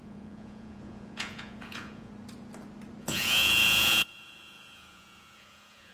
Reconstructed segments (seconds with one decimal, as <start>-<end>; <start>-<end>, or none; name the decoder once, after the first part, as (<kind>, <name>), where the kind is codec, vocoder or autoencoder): 0.0-2.1 (vocoder, Vocos); 3.0-5.9